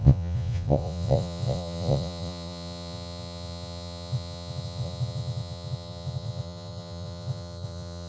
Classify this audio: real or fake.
fake